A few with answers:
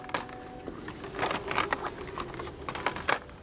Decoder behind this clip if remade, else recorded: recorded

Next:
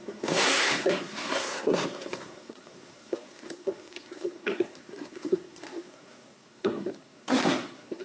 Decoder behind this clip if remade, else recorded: remade, codec, SNAC